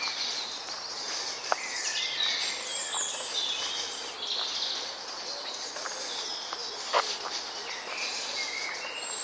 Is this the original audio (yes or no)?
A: yes